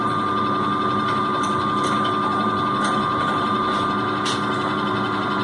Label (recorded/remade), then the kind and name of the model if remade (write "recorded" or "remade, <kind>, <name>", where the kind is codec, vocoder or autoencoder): recorded